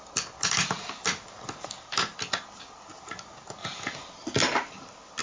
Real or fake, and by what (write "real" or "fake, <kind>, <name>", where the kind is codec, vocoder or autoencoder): real